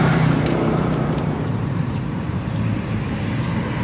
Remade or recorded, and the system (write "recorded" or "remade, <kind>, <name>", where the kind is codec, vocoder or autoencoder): remade, vocoder, BigVGAN v2